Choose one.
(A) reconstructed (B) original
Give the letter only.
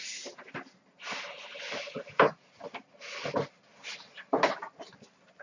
B